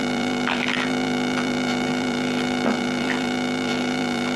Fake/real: fake